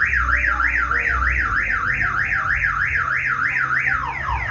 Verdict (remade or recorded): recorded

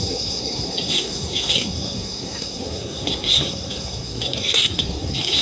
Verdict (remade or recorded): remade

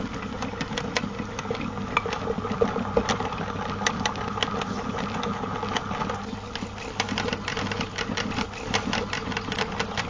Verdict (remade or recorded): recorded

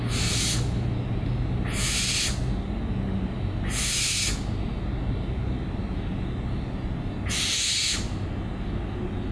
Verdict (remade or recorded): recorded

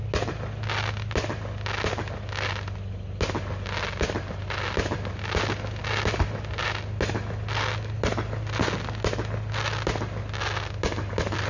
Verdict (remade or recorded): recorded